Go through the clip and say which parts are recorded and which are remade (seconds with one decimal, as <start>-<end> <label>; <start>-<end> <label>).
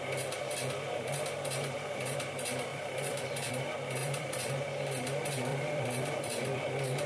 0.0-2.7 recorded; 2.7-3.5 remade; 3.5-4.0 recorded; 4.0-4.5 remade; 4.5-5.5 recorded; 5.5-6.6 remade; 6.6-7.1 recorded